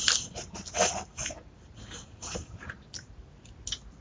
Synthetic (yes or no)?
no